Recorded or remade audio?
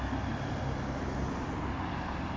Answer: recorded